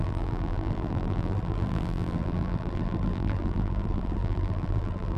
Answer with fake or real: fake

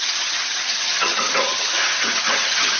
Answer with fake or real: fake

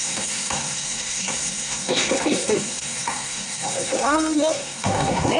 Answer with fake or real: fake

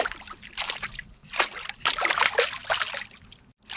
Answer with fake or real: real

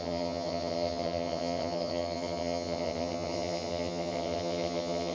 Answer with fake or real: fake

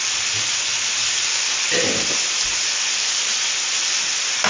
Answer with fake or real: real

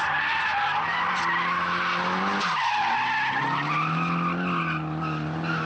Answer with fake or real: real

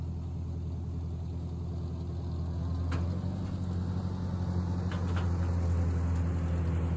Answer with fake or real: real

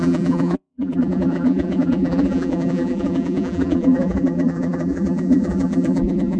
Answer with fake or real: fake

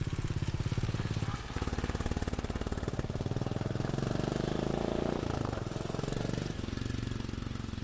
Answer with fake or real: real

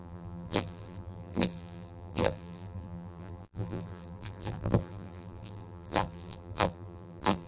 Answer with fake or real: fake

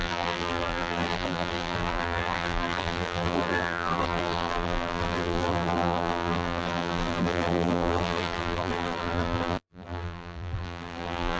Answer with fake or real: fake